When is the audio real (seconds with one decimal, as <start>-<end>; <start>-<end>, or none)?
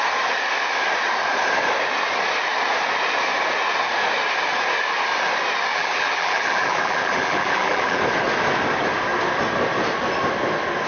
0.0-5.7; 8.0-10.9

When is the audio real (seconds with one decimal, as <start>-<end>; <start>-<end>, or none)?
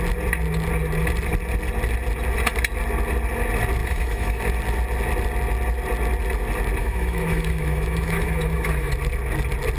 0.0-3.8; 4.4-6.8; 8.9-9.8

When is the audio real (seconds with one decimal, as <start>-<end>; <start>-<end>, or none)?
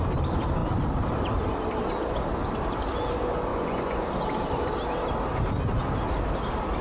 0.0-3.5; 4.0-6.8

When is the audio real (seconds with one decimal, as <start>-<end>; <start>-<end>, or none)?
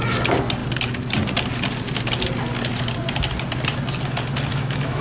0.0-4.5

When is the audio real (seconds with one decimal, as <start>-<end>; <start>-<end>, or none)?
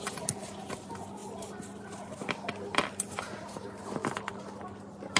0.0-5.2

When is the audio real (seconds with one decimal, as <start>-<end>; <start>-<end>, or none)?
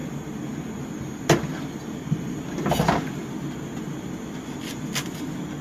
0.0-5.6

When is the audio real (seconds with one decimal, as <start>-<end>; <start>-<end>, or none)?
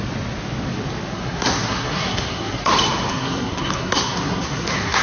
0.0-1.1; 2.7-3.1